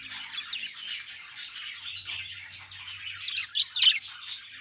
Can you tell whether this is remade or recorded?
recorded